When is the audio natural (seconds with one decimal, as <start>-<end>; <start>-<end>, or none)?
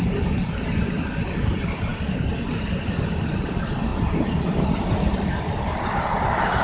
0.0-6.6